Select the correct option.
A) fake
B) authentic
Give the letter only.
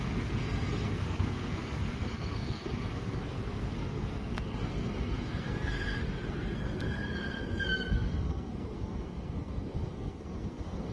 A